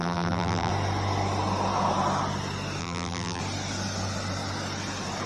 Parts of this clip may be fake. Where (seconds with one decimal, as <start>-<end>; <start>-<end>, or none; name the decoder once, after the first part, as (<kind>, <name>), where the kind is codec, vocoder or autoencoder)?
0.0-0.7 (vocoder, BigVGAN v2); 2.8-3.4